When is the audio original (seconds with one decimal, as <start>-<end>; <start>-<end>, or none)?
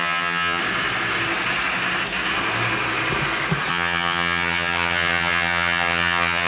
0.6-3.7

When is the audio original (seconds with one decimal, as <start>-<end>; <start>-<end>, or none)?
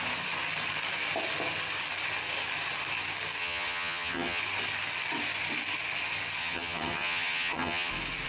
0.0-3.4; 4.4-6.4; 7.9-8.3